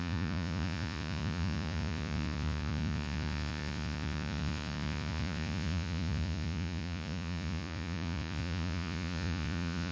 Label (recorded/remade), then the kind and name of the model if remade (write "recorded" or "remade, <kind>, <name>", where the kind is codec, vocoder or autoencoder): remade, vocoder, Vocos